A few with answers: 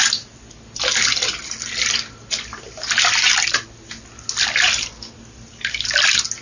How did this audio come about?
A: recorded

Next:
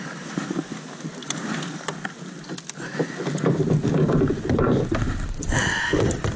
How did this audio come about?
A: recorded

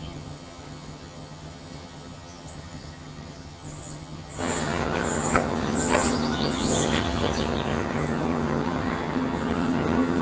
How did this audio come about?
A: remade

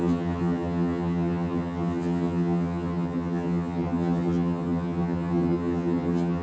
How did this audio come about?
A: remade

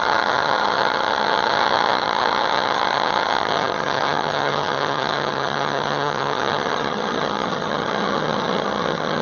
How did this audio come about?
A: remade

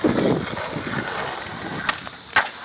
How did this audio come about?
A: recorded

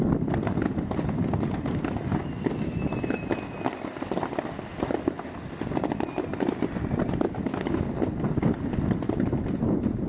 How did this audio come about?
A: recorded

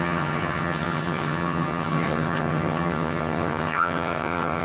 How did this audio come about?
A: remade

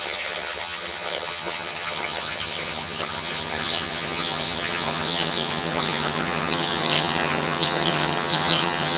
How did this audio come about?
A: remade